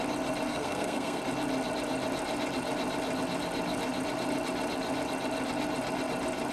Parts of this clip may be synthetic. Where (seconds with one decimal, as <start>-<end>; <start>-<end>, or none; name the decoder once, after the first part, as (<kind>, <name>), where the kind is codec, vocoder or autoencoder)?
0.5-1.2 (codec, SNAC)